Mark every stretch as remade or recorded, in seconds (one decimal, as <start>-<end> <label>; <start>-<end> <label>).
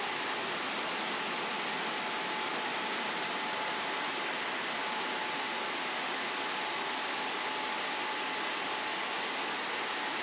0.0-10.2 recorded